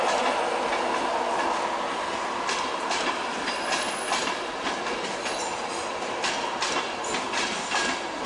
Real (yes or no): yes